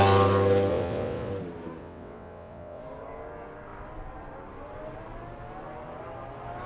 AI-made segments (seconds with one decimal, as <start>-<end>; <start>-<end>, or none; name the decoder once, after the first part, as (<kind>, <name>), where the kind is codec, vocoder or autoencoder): 0.7-1.3 (vocoder, WaveNeXt); 1.8-2.8